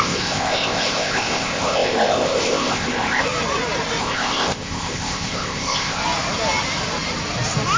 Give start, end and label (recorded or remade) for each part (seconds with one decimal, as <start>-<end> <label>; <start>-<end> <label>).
0.0-3.2 remade; 3.2-4.0 recorded; 4.0-6.0 remade; 6.0-7.8 recorded